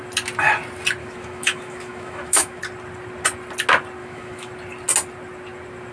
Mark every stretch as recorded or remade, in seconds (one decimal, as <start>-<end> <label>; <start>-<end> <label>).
0.0-1.0 recorded; 1.0-2.6 remade; 2.6-4.0 recorded; 4.0-4.5 remade; 4.5-5.9 recorded